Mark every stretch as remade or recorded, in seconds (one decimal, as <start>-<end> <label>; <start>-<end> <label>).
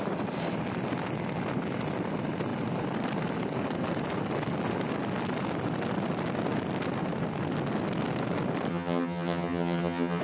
0.0-8.7 recorded; 8.7-10.2 remade